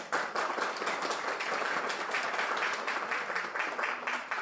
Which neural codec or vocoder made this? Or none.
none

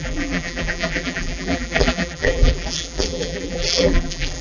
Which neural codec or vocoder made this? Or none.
vocoder, BigVGAN v2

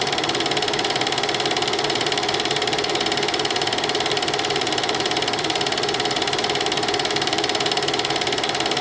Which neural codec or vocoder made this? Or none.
vocoder, BigVGAN v2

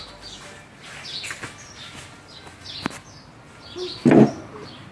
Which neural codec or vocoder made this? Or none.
none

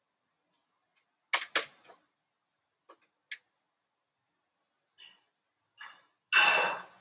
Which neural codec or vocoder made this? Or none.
none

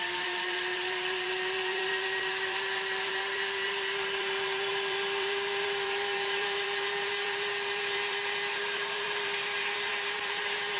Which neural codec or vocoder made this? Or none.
vocoder, BigVGAN v2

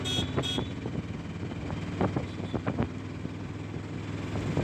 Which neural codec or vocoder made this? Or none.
none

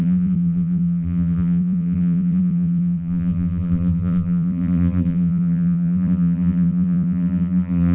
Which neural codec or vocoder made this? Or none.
vocoder, BigVGAN v2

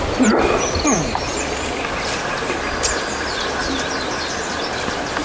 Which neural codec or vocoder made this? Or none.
none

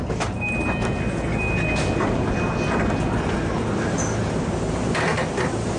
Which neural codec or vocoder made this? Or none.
none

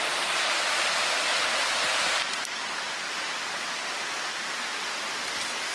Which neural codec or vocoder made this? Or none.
none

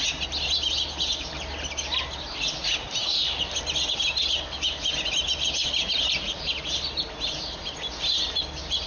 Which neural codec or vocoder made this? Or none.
none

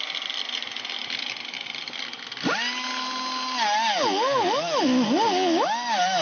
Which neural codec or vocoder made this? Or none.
none